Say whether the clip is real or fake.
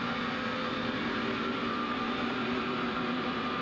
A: fake